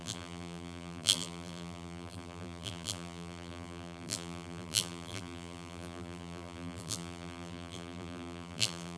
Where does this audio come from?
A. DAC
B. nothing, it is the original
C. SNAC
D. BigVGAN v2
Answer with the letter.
D